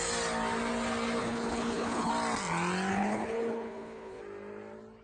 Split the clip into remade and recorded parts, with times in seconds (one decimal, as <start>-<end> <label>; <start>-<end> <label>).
0.0-1.2 recorded; 1.2-2.1 remade; 2.1-2.9 recorded; 2.9-4.2 remade; 4.2-5.0 recorded